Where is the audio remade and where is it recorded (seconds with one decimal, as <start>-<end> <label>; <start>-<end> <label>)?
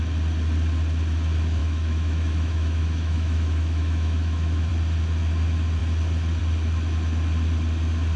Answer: 0.0-1.6 recorded; 1.6-4.7 remade; 4.7-8.2 recorded